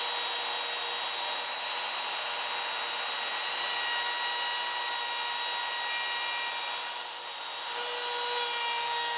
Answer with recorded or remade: recorded